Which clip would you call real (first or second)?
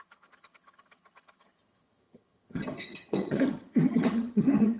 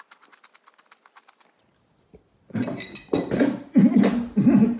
second